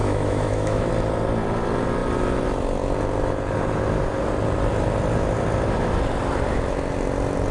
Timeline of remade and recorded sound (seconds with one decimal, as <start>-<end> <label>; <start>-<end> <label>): 0.0-0.9 remade; 0.9-7.5 recorded